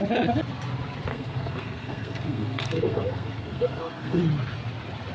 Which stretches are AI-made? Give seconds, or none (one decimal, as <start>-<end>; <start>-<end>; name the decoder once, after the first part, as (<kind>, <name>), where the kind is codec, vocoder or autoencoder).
1.1-4.2 (codec, SNAC)